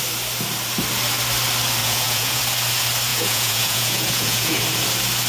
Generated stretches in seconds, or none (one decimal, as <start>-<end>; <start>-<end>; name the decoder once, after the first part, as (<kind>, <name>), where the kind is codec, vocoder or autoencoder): 1.8-2.4 (vocoder, Vocos); 3.1-4.6